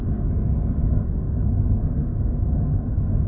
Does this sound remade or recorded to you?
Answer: remade